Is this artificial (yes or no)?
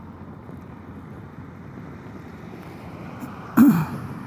yes